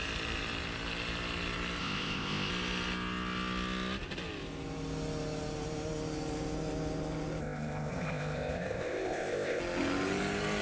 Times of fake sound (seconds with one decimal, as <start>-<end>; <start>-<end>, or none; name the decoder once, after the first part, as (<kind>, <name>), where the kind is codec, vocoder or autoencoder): 1.8-2.5 (codec, ZipCodec); 7.4-9.6